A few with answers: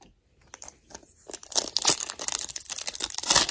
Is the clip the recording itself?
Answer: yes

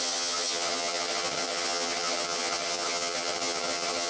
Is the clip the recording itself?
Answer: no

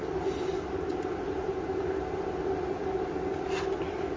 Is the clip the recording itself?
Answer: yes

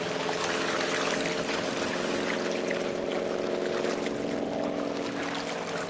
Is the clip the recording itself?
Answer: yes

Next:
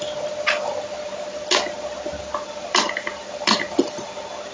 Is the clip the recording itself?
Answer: yes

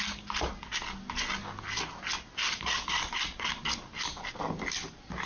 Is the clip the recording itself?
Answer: yes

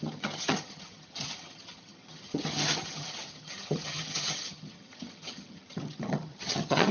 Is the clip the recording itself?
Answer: no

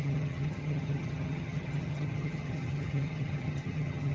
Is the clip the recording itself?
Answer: no